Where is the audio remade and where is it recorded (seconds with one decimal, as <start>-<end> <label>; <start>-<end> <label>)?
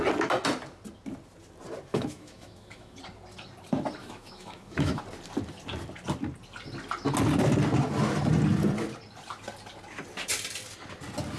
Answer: 0.0-1.9 recorded; 1.9-3.0 remade; 3.0-4.0 recorded; 4.0-5.0 remade; 5.0-11.4 recorded